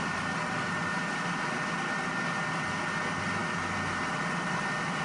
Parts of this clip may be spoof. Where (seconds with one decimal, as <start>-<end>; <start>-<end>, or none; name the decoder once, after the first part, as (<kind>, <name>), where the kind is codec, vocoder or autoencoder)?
none